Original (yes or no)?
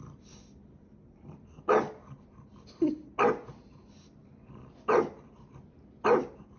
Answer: yes